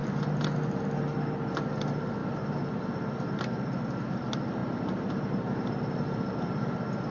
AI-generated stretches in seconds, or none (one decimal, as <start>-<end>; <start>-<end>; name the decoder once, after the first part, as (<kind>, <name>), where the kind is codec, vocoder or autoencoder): none